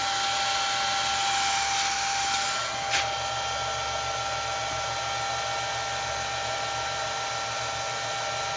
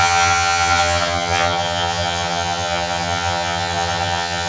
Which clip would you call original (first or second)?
first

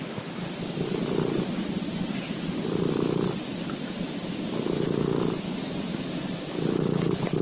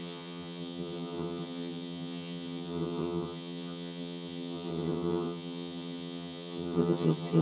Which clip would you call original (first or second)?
first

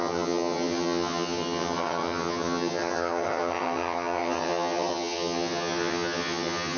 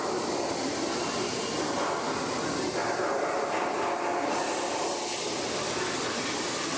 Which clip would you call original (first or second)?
second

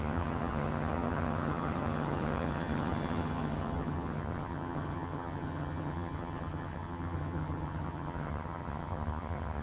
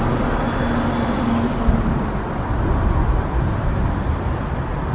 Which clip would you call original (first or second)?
second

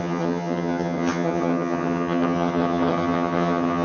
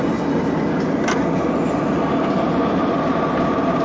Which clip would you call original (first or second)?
second